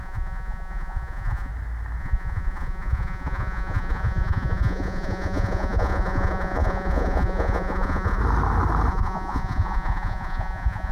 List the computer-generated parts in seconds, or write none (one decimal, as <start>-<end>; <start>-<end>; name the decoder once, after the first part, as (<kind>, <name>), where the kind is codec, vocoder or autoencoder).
0.0-1.5 (vocoder, Vocos); 2.0-8.2; 8.9-10.9